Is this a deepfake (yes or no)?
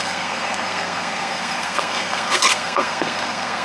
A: yes